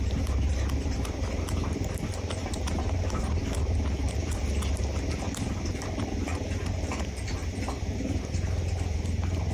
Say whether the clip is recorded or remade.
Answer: remade